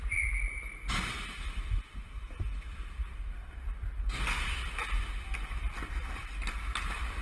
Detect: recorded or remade recorded